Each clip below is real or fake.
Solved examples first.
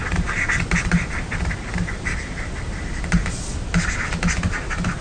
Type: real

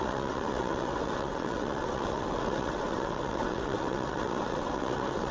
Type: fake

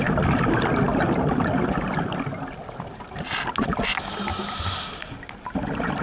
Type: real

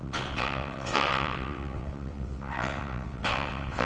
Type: fake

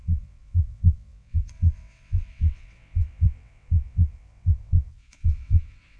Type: fake